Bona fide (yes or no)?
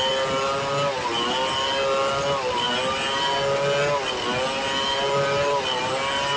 yes